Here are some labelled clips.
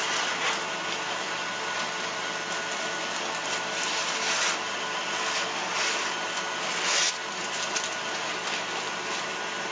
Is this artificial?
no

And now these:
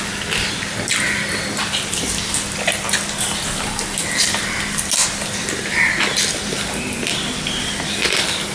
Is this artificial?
no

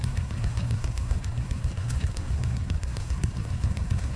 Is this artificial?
yes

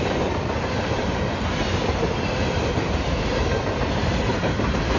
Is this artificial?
no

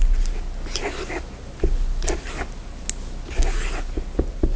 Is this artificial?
no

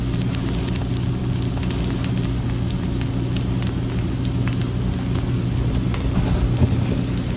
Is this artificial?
no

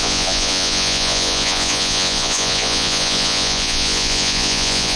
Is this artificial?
yes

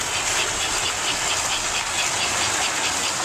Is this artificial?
no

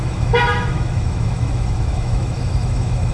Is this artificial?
yes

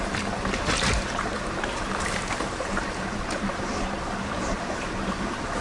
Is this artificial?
yes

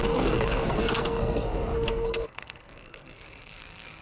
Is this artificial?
yes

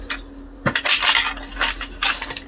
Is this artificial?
no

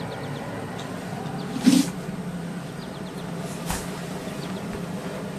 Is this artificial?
no